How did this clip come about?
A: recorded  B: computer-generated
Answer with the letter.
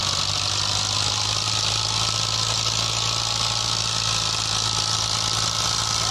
A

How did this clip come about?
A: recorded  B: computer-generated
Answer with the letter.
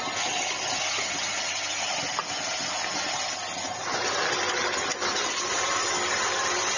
A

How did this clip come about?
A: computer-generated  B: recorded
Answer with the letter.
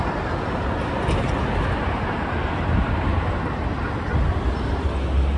B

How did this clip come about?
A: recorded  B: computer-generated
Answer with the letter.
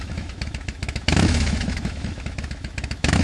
B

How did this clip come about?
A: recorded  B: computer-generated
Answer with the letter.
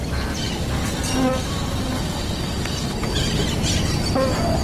A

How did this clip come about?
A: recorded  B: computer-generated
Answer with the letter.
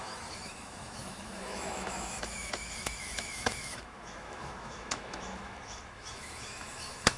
B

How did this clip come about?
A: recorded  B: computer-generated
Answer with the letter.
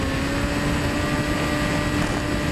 A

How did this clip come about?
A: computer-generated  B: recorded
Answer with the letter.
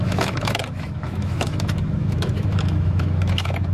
A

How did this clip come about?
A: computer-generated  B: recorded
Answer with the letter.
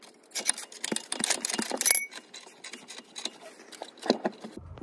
B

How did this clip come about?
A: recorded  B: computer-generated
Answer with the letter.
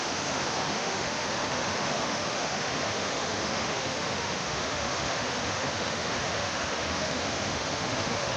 B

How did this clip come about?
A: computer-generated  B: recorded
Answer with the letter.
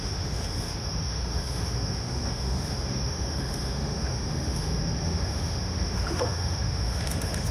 A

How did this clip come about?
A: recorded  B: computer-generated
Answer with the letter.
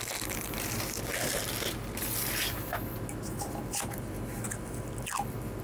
A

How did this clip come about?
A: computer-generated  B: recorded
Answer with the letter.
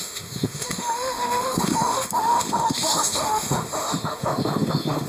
A